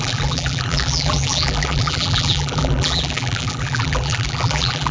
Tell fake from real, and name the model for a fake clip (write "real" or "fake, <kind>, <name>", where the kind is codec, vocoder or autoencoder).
fake, vocoder, BigVGAN v2